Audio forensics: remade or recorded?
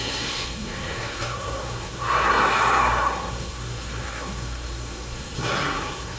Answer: remade